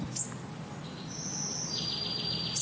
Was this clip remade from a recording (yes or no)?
no